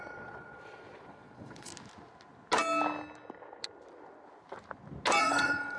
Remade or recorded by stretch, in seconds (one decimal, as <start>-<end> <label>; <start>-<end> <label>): 0.0-1.7 remade; 1.7-5.2 recorded; 5.2-5.8 remade